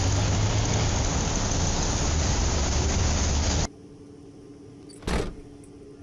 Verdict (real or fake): real